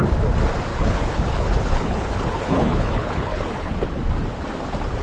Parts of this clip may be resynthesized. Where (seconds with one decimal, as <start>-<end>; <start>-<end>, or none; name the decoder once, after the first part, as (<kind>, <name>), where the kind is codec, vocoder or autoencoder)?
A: 0.7-3.7 (codec, HILCodec)